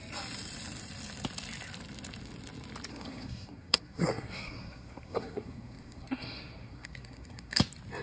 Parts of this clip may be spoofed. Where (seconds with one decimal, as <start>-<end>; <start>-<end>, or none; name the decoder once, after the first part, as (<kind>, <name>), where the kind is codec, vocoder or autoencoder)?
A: 2.9-7.6 (codec, SNAC)